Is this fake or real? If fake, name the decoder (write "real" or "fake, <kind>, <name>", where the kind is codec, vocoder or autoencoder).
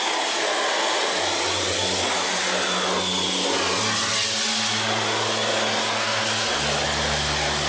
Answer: real